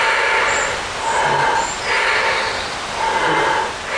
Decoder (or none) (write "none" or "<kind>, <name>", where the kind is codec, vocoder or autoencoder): none